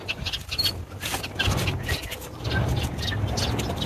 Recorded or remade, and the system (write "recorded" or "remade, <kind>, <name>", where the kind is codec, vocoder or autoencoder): recorded